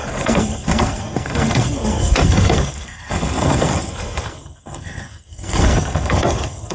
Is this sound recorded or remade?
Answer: remade